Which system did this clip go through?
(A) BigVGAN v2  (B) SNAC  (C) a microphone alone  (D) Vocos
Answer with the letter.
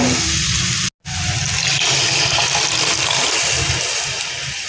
C